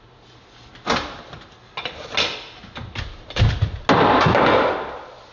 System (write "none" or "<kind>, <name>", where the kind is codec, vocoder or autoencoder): none